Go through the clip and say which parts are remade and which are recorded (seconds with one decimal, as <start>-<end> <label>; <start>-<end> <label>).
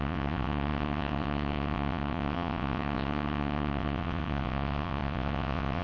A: 0.0-5.8 remade